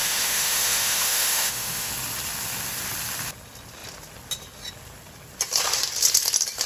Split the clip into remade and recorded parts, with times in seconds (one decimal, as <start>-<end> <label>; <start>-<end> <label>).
0.0-1.9 remade; 1.9-6.7 recorded